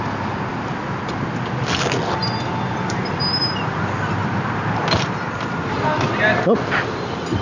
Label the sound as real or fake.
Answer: real